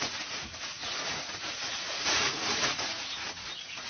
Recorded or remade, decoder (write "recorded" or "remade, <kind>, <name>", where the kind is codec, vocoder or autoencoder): remade, vocoder, Vocos